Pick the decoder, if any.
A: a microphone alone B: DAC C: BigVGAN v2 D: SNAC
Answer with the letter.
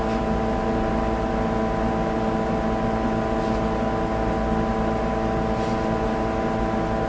A